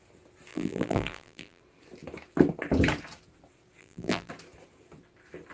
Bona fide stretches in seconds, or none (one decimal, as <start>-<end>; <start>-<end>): 0.0-0.5; 1.6-3.8; 4.3-5.5